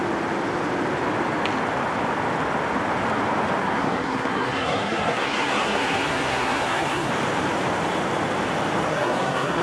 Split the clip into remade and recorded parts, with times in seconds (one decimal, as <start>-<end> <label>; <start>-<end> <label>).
0.0-3.6 recorded; 3.6-7.1 remade; 7.1-8.9 recorded; 8.9-9.6 remade